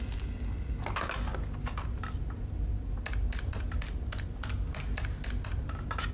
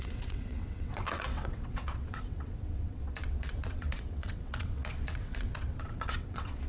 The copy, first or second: second